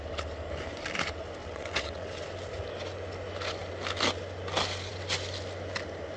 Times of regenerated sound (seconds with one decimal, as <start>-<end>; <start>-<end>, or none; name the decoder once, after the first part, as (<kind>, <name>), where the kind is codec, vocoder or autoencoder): 1.4-2.2 (vocoder, WaveNeXt)